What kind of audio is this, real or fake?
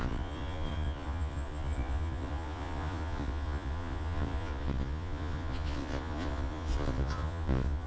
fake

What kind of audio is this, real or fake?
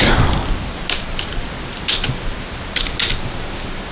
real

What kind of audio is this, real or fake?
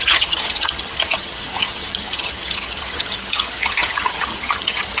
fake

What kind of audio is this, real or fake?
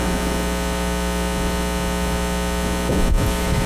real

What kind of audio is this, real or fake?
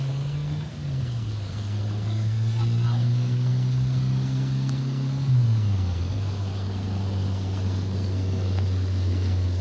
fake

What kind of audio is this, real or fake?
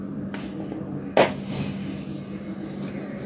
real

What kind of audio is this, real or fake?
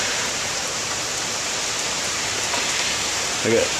fake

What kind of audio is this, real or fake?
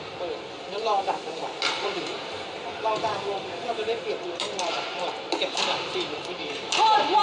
fake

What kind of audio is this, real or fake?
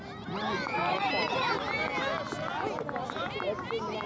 real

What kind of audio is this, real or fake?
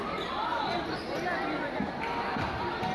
fake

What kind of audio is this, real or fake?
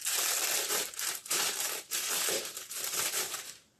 fake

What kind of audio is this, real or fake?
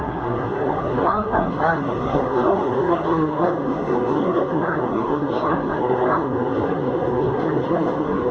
fake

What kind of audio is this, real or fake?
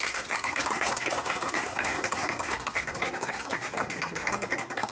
fake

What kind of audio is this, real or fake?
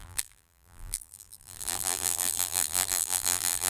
fake